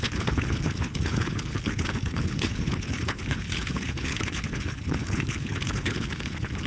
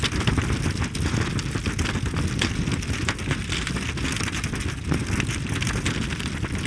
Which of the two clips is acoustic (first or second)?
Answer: second